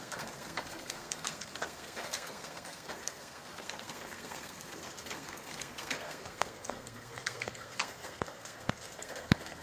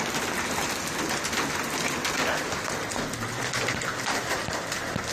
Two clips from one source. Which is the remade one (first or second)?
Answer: first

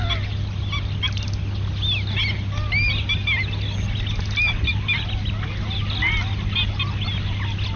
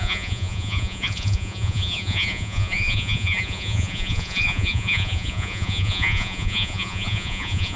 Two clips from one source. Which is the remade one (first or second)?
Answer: second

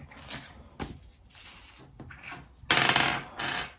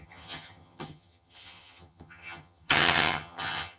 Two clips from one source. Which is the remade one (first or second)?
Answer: second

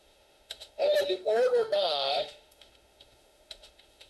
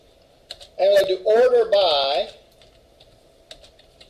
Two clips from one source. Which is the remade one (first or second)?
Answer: first